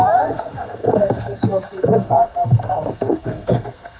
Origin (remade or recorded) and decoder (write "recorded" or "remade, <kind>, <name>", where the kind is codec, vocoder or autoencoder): remade, codec, SNAC